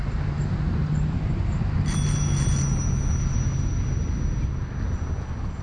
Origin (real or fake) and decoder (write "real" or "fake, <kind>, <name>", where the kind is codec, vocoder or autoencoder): real